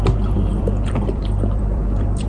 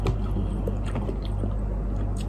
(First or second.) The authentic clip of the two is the second